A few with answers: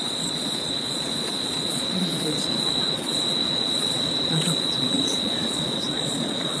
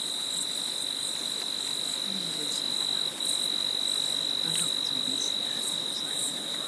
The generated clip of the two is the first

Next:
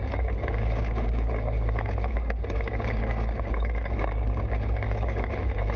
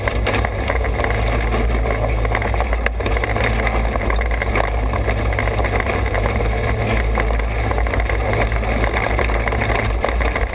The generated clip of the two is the first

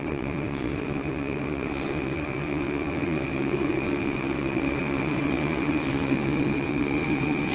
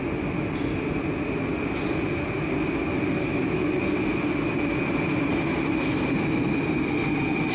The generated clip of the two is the first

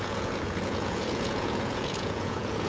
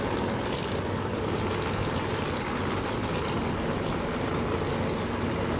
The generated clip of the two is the first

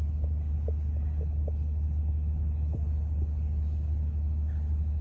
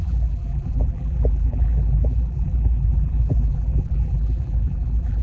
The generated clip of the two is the second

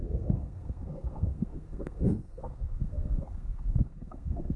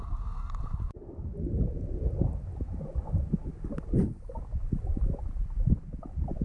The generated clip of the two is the first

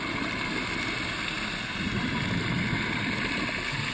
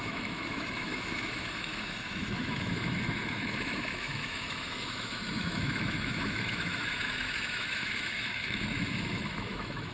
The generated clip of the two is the second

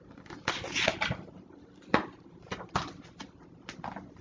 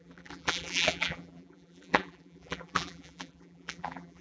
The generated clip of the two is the second